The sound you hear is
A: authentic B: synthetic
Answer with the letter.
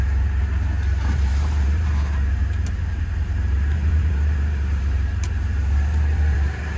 B